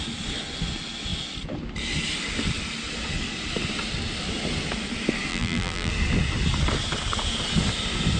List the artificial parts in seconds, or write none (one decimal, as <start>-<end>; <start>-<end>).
5.3-5.9